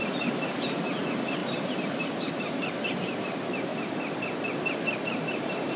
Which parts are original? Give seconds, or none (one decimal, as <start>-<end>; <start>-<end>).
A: 3.7-5.0